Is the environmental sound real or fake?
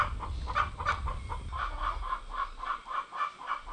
real